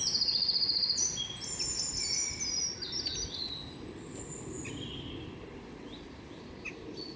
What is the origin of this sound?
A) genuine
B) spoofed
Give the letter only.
A